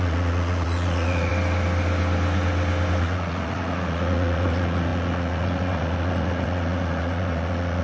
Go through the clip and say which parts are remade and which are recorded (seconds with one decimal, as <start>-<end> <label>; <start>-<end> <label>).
0.0-1.3 remade; 1.3-3.0 recorded; 3.0-7.8 remade